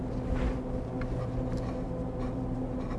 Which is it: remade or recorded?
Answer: recorded